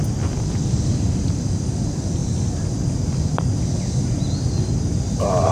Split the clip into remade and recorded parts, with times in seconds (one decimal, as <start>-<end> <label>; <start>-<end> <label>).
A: 0.0-5.5 recorded